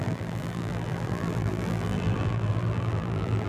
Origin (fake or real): fake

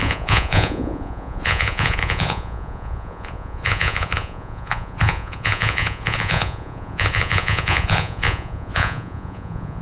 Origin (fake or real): fake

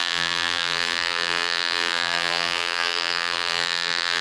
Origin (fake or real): fake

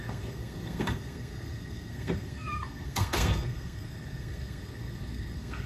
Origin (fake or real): fake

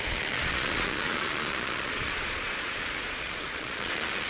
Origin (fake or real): fake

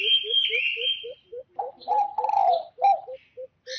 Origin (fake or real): real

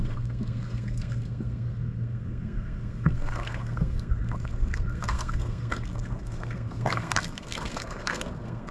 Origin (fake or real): fake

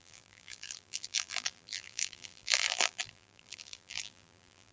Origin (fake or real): fake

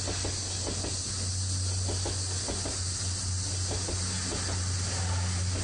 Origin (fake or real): real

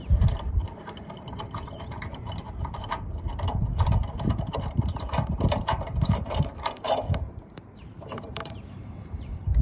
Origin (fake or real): fake